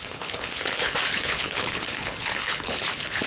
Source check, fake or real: fake